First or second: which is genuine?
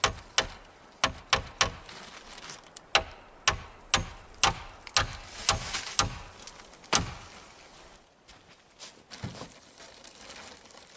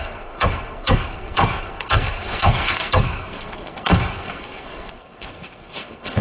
first